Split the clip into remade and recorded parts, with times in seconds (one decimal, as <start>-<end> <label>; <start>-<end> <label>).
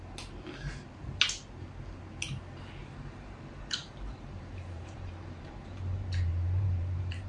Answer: 0.0-2.8 recorded; 2.8-7.3 remade